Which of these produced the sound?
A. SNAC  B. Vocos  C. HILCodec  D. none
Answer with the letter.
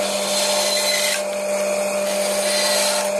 D